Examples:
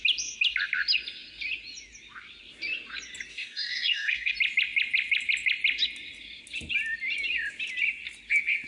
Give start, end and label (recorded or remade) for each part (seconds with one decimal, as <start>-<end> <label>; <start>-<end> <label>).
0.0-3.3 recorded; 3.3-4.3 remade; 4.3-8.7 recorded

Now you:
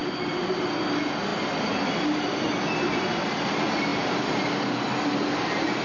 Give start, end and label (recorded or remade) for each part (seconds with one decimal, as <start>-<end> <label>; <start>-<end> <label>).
0.0-5.8 recorded

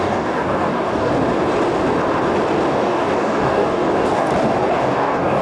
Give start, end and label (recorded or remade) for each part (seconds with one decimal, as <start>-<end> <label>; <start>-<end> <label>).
0.0-1.1 remade; 1.1-2.7 recorded; 2.7-4.3 remade; 4.3-4.8 recorded; 4.8-5.4 remade

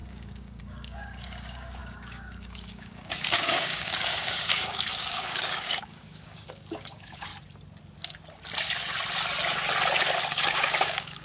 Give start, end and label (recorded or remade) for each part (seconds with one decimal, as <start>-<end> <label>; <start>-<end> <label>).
0.0-7.3 remade; 7.3-10.2 recorded; 10.2-11.2 remade

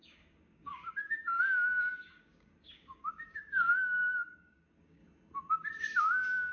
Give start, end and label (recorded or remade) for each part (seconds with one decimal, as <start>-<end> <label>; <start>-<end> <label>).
0.0-5.0 remade; 5.0-6.0 recorded; 6.0-6.5 remade

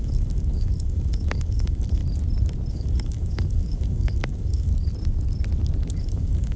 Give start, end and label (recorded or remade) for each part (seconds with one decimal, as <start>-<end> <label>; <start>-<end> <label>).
0.0-2.0 remade; 2.0-2.7 recorded; 2.7-4.7 remade; 4.7-6.0 recorded; 6.0-6.6 remade